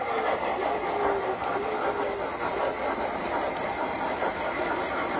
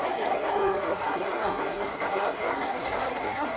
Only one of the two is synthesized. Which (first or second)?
second